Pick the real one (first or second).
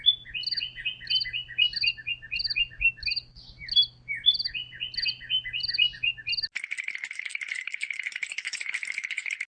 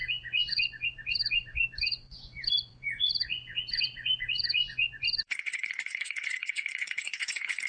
first